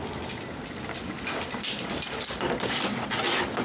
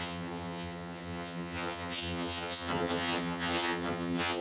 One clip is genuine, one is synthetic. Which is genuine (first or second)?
first